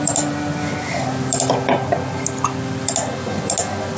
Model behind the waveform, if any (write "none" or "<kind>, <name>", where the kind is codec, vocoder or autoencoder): none